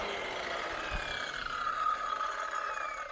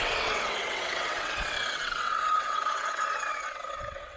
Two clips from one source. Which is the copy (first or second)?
second